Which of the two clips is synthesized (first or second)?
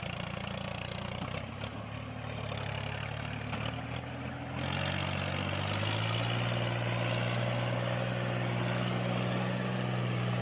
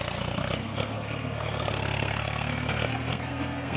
second